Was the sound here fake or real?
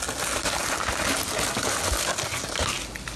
real